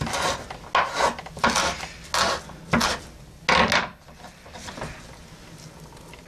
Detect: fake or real real